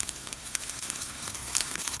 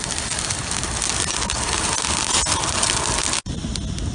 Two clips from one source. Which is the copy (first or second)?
first